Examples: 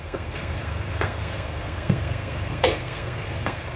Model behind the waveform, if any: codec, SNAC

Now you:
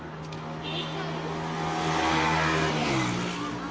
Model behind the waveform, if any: none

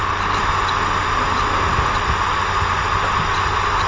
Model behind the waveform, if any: none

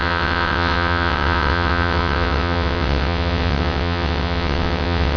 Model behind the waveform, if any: vocoder, WaveNeXt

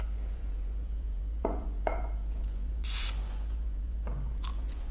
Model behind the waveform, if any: vocoder, Vocos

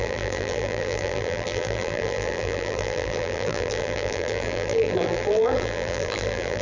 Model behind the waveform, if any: vocoder, BigVGAN v2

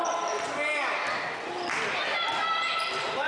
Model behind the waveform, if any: none